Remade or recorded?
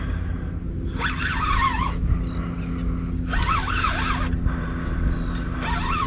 recorded